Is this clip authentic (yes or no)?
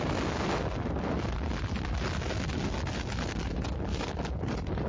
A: yes